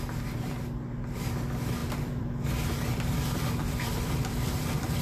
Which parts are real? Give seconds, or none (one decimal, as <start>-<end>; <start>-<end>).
0.0-1.8